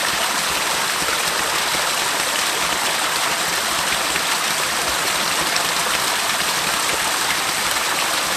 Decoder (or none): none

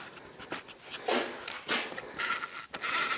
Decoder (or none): none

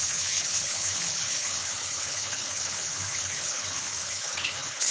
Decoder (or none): codec, HILCodec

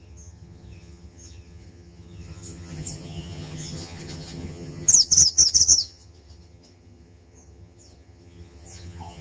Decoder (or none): vocoder, HiFi-GAN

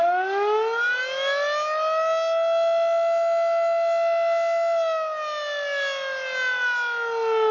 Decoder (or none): none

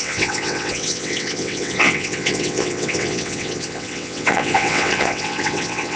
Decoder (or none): vocoder, WaveNeXt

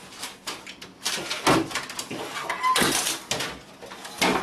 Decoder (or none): none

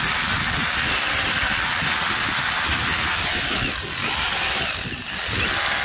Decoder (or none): none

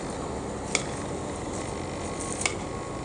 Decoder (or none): none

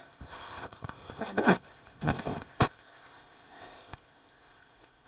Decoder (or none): codec, ZipCodec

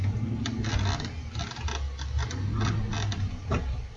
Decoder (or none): none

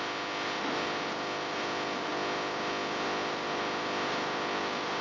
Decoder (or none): none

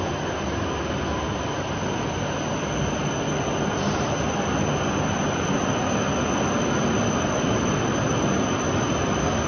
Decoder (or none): none